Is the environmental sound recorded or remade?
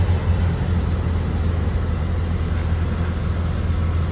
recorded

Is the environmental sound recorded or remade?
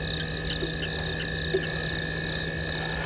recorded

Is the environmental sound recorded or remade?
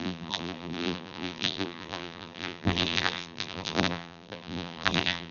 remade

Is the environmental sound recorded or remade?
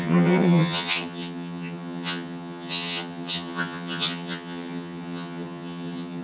remade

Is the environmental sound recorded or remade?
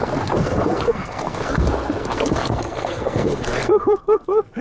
remade